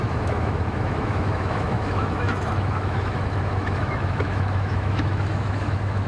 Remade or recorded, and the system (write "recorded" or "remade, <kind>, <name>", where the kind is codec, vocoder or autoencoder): remade, autoencoder, DAC-VAE